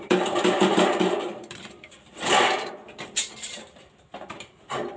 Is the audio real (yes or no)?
no